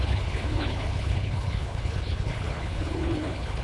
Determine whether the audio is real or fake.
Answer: fake